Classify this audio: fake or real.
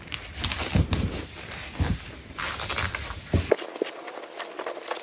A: real